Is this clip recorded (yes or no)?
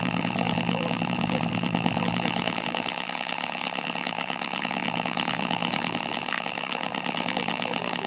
no